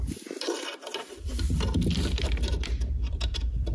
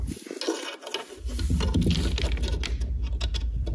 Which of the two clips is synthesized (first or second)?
first